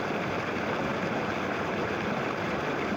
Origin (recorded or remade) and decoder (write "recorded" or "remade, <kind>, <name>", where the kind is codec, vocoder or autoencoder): recorded